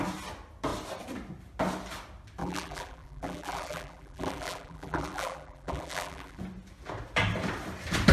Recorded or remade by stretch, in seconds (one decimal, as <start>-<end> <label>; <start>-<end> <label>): 0.0-2.4 recorded; 2.4-6.4 remade; 6.4-8.1 recorded